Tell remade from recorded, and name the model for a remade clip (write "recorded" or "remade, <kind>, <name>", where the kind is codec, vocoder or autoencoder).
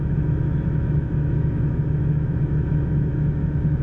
remade, autoencoder, DAC-VAE